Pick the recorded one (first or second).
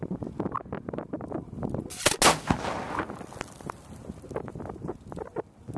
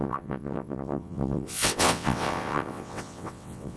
first